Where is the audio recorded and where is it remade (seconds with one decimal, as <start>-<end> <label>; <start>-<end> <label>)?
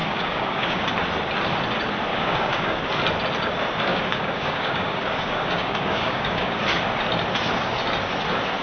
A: 0.0-0.9 remade; 0.9-2.1 recorded; 2.1-2.8 remade; 2.8-3.9 recorded; 3.9-6.6 remade; 6.6-8.6 recorded